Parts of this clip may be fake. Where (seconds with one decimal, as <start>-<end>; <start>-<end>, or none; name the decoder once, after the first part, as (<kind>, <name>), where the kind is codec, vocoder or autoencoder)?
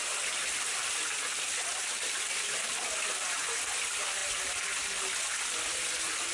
none